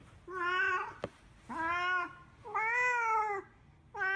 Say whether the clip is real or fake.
real